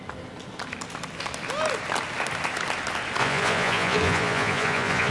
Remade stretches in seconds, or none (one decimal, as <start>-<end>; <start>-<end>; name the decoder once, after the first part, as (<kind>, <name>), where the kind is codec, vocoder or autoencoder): 3.2-5.1 (vocoder, Vocos)